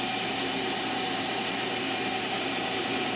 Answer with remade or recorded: remade